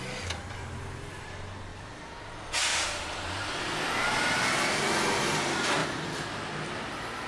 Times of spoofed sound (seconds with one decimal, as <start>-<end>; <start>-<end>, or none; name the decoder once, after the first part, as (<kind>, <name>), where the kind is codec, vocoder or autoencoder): 2.7-3.6 (vocoder, BigVGAN v2)